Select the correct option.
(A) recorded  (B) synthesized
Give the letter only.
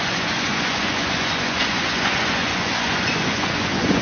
B